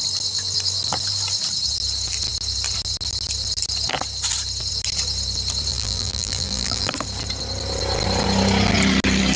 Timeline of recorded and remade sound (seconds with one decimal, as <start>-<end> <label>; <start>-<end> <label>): 0.0-5.7 recorded; 5.7-6.9 remade; 6.9-9.4 recorded